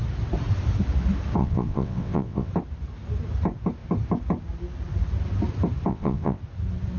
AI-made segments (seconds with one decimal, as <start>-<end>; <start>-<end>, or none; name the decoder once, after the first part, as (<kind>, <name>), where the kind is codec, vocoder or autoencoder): 1.4-2.5 (vocoder, WaveNeXt); 5.9-6.4